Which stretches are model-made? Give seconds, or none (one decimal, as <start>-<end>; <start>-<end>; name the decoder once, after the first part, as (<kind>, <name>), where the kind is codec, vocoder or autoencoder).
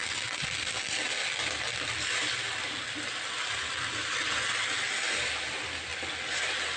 0.0-4.1 (vocoder, BigVGAN v2)